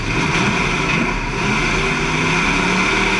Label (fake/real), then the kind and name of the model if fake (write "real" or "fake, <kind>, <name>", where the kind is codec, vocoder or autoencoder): real